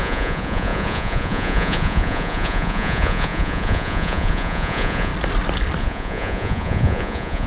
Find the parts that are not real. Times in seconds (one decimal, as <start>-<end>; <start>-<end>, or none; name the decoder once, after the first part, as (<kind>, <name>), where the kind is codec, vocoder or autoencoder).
0.0-5.1 (vocoder, Vocos); 5.8-7.5